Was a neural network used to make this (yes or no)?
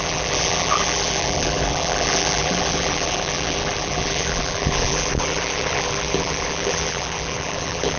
yes